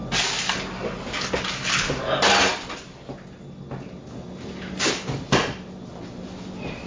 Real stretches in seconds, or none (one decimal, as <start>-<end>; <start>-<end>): 0.0-6.9